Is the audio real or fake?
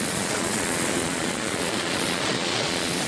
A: fake